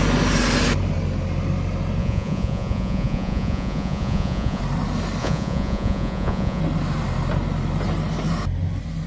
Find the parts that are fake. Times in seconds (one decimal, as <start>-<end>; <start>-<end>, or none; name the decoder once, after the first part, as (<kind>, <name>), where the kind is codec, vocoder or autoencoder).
2.0-4.6 (vocoder, Vocos); 5.2-6.6